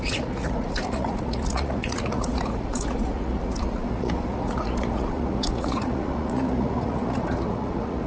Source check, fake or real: fake